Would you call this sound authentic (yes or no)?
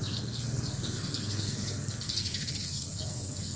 no